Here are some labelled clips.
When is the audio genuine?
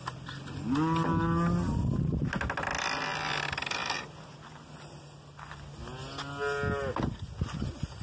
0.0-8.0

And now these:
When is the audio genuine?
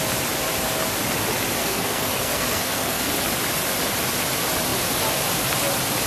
0.0-1.6; 3.1-6.1